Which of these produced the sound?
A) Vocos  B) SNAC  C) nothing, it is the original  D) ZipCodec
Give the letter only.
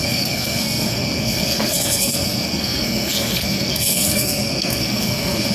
B